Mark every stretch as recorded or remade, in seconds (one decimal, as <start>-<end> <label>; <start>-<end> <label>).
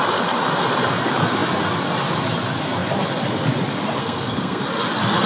0.0-4.0 recorded; 4.0-4.6 remade; 4.6-5.3 recorded